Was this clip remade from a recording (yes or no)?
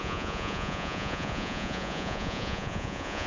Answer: yes